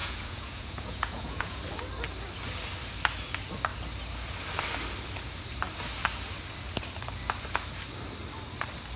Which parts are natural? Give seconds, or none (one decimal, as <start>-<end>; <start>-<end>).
1.6-9.0